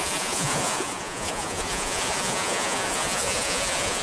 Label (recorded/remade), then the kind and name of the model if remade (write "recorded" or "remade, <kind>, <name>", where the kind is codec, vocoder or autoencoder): remade, vocoder, Vocos